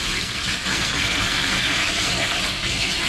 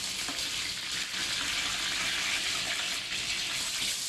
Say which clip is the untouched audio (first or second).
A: second